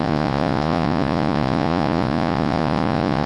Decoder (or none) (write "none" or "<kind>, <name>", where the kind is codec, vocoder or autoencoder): vocoder, Vocos